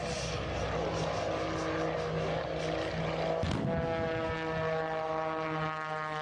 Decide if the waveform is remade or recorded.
recorded